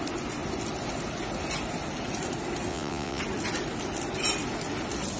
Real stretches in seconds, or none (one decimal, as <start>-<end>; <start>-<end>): 0.0-2.7; 3.2-5.2